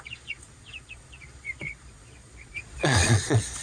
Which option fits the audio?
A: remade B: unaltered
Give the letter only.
A